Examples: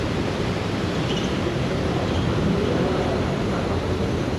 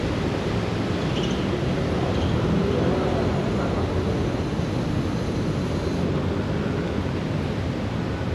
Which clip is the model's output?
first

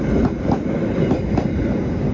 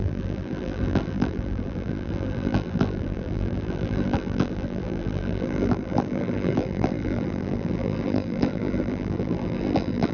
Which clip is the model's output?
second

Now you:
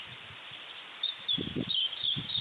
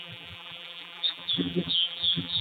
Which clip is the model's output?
second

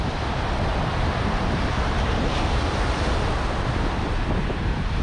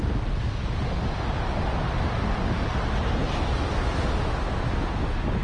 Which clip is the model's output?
first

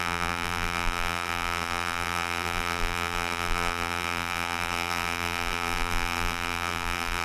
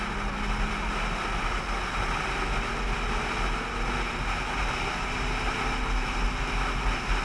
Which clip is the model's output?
first